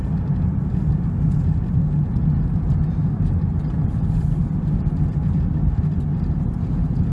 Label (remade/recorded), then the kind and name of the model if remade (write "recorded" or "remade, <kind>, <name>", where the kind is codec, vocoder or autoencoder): recorded